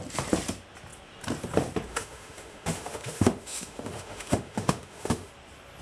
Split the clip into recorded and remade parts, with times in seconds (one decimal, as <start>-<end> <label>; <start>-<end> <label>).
0.0-1.9 recorded; 1.9-5.3 remade; 5.3-5.8 recorded